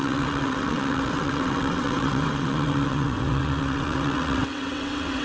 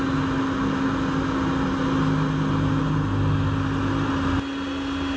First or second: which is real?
second